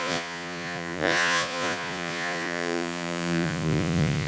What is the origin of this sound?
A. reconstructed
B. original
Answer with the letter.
A